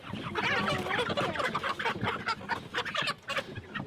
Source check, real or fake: real